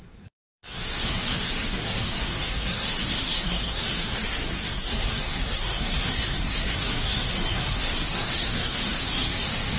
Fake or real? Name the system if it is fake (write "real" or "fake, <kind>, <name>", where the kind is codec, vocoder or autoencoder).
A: fake, codec, SNAC